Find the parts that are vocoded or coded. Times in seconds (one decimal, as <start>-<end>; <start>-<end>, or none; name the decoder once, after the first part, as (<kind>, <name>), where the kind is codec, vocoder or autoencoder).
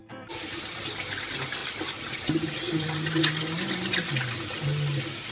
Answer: 0.0-1.2 (vocoder, BigVGAN v2); 1.6-3.1